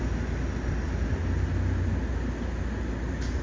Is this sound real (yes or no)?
yes